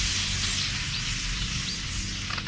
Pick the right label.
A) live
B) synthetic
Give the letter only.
A